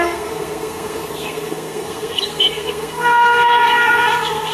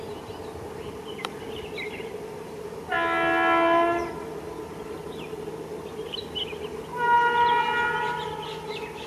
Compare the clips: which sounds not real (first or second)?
first